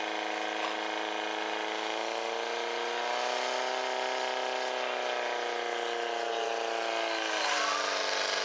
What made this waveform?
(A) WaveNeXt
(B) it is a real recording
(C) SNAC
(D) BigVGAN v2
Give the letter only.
B